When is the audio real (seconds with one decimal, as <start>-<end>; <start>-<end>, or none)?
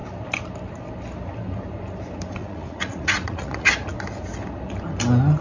0.0-2.4; 3.7-5.4